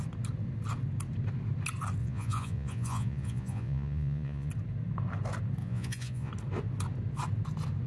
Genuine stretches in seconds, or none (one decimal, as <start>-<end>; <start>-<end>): 0.0-2.0; 4.5-5.6; 6.3-7.9